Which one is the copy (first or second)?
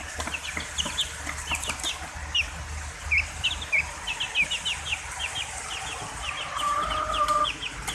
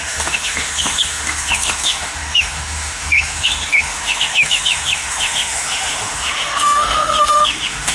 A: second